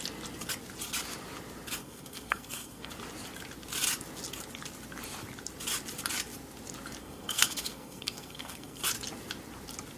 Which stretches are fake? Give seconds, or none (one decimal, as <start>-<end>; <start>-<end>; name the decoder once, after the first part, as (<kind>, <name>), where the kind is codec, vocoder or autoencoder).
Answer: 1.8-2.9 (codec, SNAC); 7.0-8.8